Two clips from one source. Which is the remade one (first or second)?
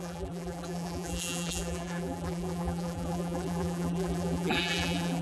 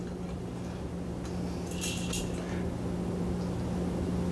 first